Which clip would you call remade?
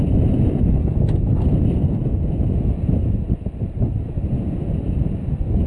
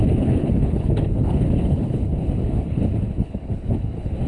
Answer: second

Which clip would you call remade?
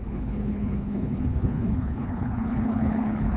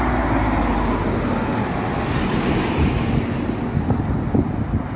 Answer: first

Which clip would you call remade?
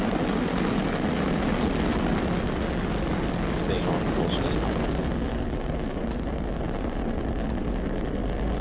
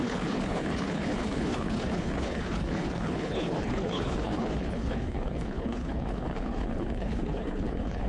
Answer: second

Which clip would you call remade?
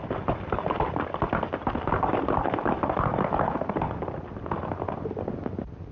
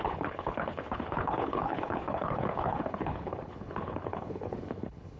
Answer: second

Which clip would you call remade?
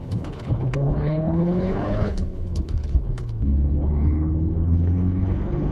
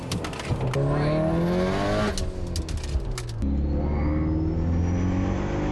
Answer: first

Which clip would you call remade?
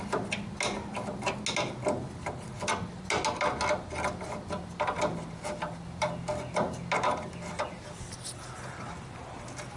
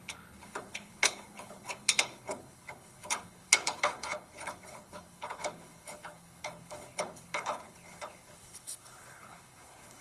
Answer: second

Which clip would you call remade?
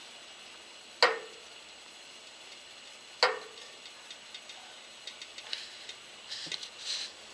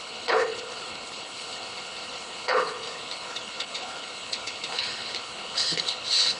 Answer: second